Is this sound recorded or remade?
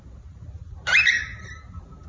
recorded